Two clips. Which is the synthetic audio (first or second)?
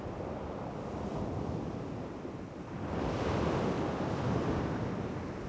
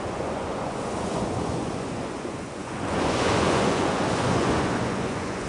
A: second